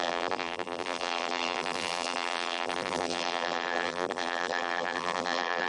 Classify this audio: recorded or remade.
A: remade